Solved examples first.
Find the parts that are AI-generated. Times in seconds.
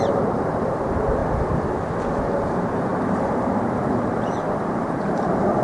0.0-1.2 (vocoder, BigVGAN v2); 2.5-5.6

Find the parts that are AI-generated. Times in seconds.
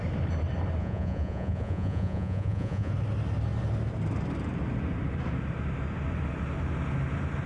0.8-2.9 (vocoder, Vocos)